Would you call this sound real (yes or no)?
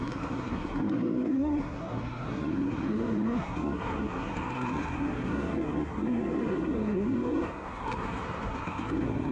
no